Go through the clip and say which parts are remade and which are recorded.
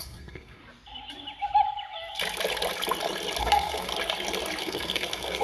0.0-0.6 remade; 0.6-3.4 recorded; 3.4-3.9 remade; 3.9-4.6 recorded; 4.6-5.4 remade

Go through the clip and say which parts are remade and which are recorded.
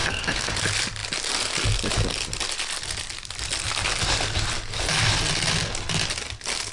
0.0-0.5 remade; 0.5-6.7 recorded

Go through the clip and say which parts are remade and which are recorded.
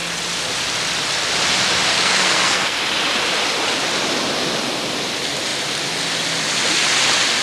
0.0-1.9 recorded; 1.9-2.8 remade; 2.8-7.4 recorded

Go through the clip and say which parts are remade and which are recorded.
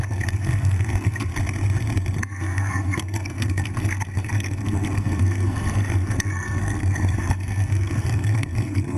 0.0-1.3 remade; 1.3-2.2 recorded; 2.2-9.0 remade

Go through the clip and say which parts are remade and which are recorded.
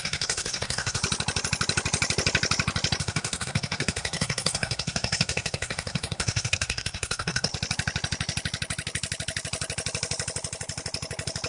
0.0-1.0 remade; 1.0-3.0 recorded; 3.0-7.5 remade; 7.5-11.5 recorded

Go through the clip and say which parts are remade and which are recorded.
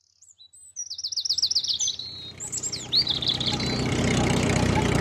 0.0-5.0 recorded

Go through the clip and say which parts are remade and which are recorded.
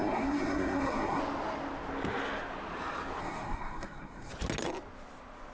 0.0-1.2 remade; 1.2-3.2 recorded; 3.2-4.3 remade; 4.3-5.5 recorded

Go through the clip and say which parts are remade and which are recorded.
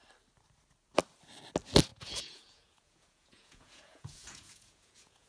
0.0-1.9 recorded; 1.9-5.3 remade